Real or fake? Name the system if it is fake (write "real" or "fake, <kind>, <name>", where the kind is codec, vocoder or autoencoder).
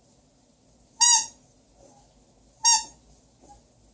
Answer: real